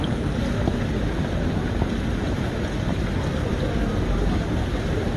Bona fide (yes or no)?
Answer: yes